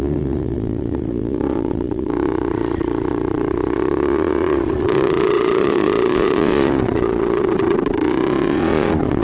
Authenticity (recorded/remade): remade